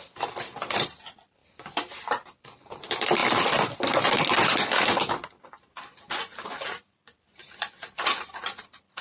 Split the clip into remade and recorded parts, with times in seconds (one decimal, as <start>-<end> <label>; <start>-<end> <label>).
0.0-3.2 remade; 3.2-7.0 recorded; 7.0-9.0 remade